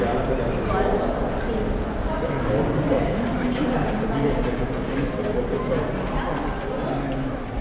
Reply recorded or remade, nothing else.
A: recorded